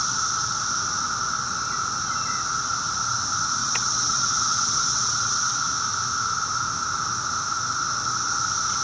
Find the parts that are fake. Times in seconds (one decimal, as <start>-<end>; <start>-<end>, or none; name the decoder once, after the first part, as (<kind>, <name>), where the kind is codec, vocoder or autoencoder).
3.6-5.6 (vocoder, WaveNeXt)